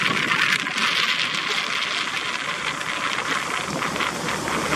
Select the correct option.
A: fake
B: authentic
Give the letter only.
B